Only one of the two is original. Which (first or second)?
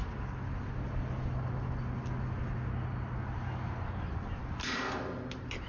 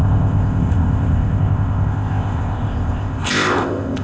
first